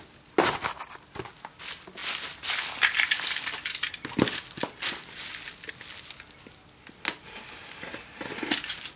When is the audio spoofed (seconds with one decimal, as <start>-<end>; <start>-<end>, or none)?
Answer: none